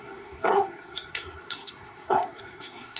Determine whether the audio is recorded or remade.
remade